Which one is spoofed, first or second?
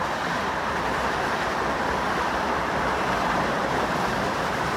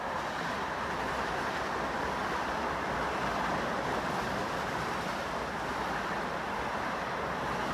first